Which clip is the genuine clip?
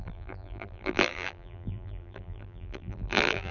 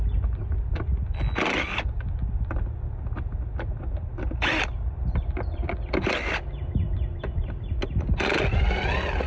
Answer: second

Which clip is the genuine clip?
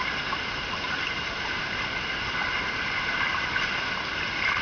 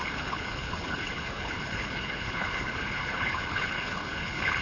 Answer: first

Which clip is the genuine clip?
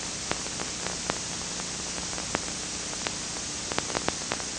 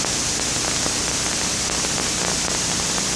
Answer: first